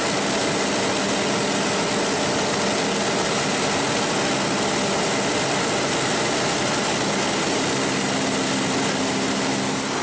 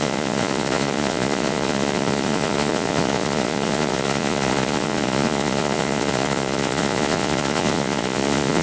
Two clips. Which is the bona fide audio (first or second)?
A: first